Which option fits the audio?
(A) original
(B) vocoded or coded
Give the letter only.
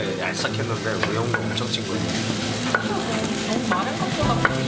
A